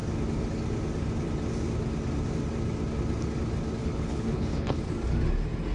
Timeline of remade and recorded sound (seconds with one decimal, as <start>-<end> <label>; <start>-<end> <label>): 0.0-3.8 recorded; 3.8-4.8 remade; 4.8-5.7 recorded